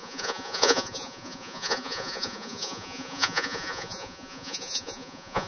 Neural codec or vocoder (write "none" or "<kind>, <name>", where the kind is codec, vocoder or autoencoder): vocoder, Vocos